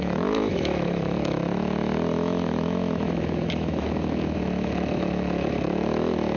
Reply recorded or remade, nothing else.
remade